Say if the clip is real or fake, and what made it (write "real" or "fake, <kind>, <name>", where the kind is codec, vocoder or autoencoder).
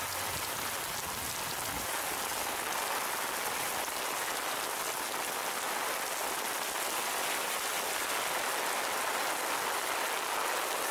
real